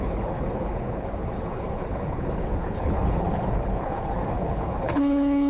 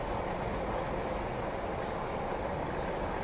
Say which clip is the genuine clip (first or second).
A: second